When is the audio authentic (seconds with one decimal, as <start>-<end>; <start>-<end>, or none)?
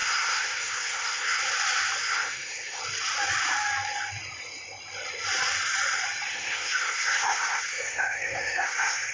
1.4-2.0; 2.8-6.3